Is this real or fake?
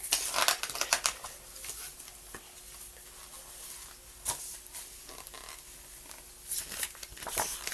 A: real